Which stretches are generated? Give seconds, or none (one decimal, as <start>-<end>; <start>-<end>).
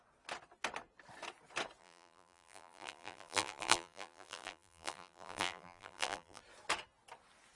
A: 1.8-6.4